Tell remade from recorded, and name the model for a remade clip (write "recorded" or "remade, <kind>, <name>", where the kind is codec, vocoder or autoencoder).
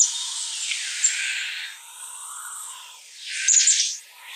recorded